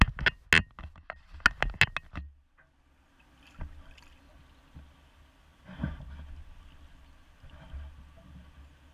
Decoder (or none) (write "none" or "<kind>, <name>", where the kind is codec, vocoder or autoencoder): none